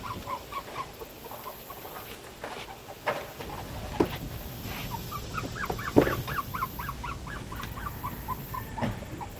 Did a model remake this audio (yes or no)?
no